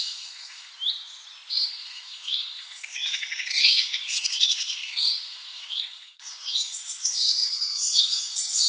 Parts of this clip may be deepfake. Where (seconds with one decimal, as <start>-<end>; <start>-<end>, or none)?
0.0-0.7; 1.5-8.7